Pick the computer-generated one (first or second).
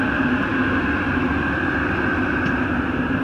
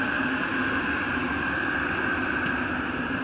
second